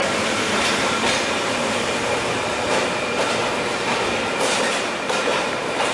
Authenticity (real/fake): fake